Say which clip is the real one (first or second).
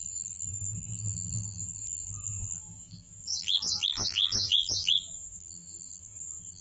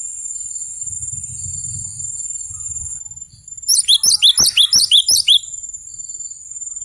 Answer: second